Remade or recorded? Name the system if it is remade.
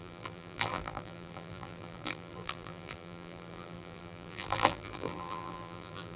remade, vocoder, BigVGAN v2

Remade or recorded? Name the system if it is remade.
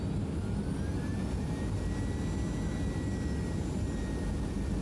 recorded